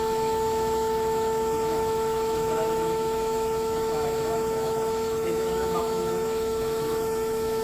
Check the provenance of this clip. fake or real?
fake